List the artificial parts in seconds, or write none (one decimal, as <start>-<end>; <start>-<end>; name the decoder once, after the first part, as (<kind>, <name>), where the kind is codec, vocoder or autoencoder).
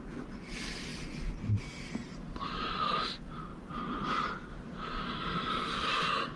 2.0-2.6 (vocoder, BigVGAN v2); 3.5-5.0